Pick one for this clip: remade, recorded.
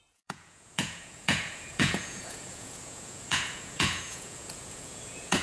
remade